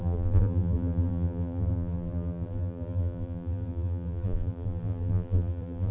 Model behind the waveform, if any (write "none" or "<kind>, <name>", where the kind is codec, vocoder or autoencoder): vocoder, BigVGAN v2